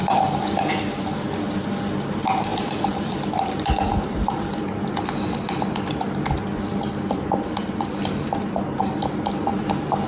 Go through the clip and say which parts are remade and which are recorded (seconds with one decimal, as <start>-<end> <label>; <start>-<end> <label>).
0.0-2.5 recorded; 2.5-4.3 remade; 4.3-10.1 recorded